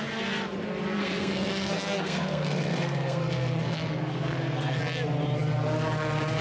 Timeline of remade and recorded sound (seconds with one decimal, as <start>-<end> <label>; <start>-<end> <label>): 0.0-1.0 recorded; 1.0-4.8 remade; 4.8-6.4 recorded